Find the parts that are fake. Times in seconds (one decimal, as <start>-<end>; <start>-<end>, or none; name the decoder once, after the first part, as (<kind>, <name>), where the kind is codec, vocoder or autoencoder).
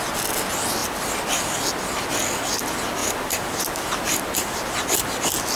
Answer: 3.0-5.1 (vocoder, BigVGAN v2)